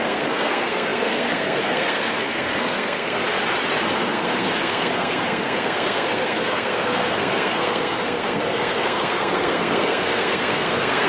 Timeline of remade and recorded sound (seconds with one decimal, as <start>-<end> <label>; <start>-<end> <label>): 0.0-3.2 remade; 3.2-3.9 recorded; 3.9-11.1 remade